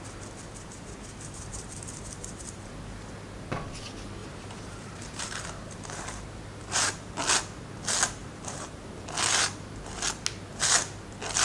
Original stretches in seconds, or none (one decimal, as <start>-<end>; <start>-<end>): 0.0-0.5; 2.7-4.2; 7.1-8.2; 8.9-11.4